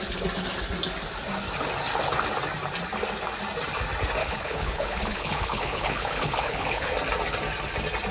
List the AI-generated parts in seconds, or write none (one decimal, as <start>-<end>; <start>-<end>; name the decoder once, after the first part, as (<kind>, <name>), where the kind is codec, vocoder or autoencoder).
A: 4.2-6.9 (codec, HILCodec)